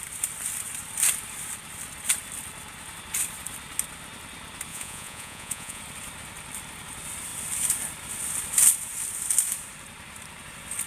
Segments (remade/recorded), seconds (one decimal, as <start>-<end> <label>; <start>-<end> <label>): 0.0-4.7 recorded; 4.7-5.8 remade; 5.8-10.9 recorded

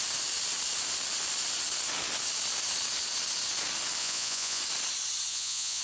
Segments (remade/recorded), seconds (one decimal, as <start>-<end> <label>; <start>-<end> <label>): 0.0-4.0 recorded; 4.0-4.6 remade; 4.6-5.3 recorded; 5.3-5.8 remade

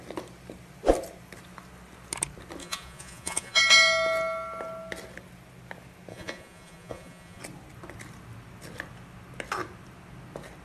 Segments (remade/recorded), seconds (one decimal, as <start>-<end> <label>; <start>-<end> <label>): 0.0-2.6 recorded; 2.6-3.6 remade; 3.6-6.1 recorded; 6.1-7.4 remade; 7.4-10.6 recorded

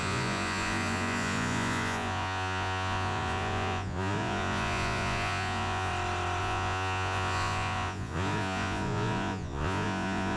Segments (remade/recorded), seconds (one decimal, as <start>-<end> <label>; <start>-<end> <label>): 0.0-5.9 remade; 5.9-6.4 recorded; 6.4-10.4 remade

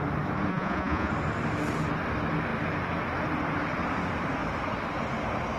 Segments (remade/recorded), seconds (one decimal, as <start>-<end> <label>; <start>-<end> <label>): 0.0-0.5 recorded; 0.5-1.1 remade; 1.1-5.6 recorded